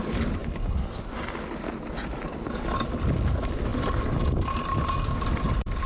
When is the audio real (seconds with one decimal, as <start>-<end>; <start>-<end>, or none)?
0.0-3.7; 4.4-5.9